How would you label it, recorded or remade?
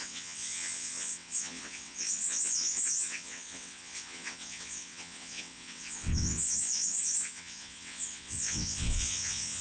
remade